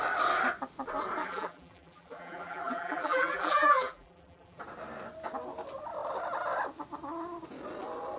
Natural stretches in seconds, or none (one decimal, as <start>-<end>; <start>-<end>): 0.0-1.2; 4.6-8.2